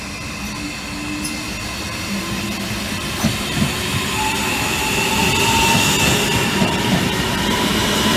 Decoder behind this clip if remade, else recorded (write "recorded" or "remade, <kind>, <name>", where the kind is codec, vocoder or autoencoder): recorded